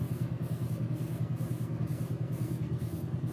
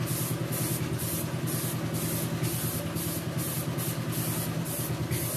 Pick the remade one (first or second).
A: first